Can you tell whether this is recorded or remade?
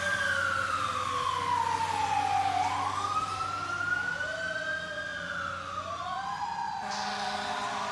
recorded